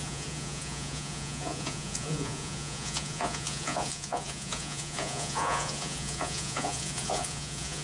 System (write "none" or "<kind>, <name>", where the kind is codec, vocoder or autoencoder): vocoder, Vocos